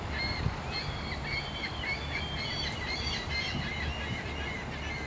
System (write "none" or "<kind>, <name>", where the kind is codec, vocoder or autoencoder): none